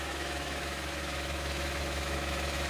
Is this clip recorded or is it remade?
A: remade